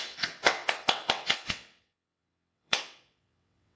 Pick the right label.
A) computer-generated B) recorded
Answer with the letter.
A